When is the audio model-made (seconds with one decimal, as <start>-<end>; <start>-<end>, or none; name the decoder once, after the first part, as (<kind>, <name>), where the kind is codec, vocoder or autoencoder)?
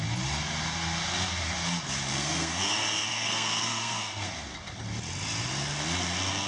2.1-2.6 (codec, SNAC); 3.1-4.3